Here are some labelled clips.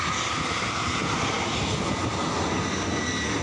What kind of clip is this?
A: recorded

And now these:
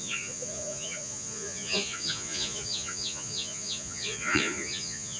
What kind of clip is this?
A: remade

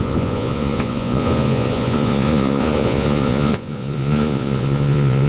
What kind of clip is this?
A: remade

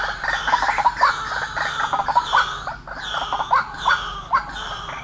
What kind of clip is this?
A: recorded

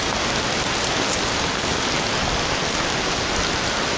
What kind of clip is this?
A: recorded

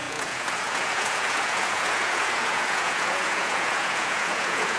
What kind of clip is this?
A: remade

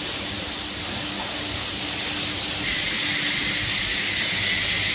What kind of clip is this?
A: recorded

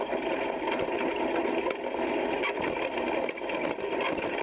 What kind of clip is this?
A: recorded